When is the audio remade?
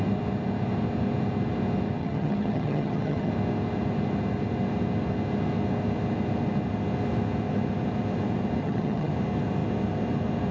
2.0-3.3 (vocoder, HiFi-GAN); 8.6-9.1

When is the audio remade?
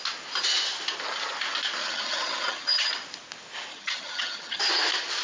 1.8-2.9 (vocoder, HiFi-GAN); 3.7-4.6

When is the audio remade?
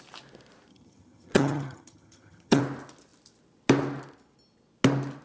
0.7-2.6 (vocoder, HiFi-GAN)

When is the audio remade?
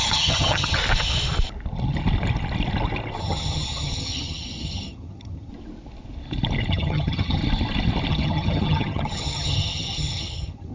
0.0-0.8 (vocoder, HiFi-GAN); 3.2-5.5; 6.7-7.4; 8.1-10.7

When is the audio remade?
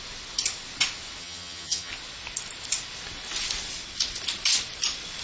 1.2-1.9 (vocoder, HiFi-GAN)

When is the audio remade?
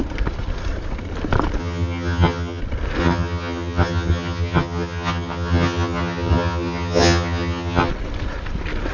1.6-2.6 (vocoder, HiFi-GAN); 3.0-7.9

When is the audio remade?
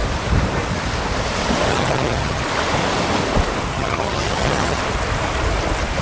1.7-2.4 (vocoder, HiFi-GAN); 3.7-4.8